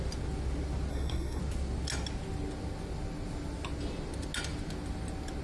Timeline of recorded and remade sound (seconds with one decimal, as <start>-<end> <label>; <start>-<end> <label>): 0.0-0.9 recorded; 0.9-1.4 remade; 1.4-5.4 recorded